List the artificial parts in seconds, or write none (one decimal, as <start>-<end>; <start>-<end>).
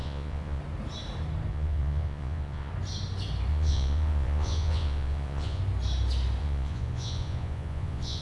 0.0-0.6; 1.5-2.7; 3.5-5.6; 6.4-8.2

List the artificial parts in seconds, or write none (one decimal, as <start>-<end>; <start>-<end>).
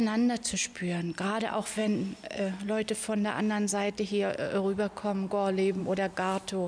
none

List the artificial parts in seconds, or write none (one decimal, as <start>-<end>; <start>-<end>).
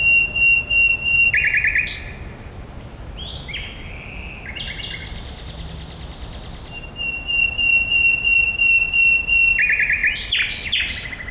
none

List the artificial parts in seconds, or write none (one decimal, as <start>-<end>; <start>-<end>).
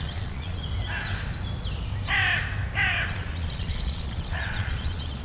0.0-0.6; 3.1-5.2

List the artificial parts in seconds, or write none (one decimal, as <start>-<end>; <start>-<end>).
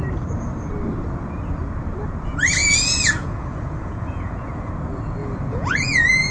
2.6-4.7; 5.2-6.3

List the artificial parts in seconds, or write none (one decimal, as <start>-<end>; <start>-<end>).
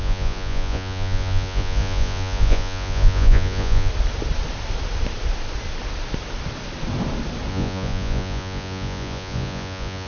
0.0-3.9; 7.5-10.1